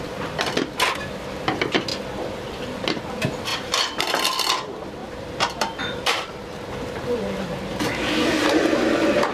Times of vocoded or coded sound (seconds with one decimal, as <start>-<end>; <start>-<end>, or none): 5.0-9.3